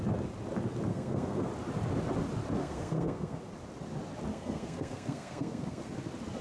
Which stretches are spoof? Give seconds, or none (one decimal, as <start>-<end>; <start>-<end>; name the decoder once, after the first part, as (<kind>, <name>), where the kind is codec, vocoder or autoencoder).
0.9-1.5 (codec, SNAC); 2.6-3.4; 4.3-5.9